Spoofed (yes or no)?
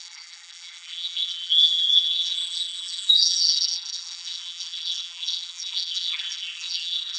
yes